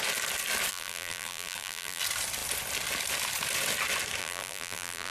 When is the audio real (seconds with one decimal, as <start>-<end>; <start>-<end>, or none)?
0.0-0.7; 2.0-4.2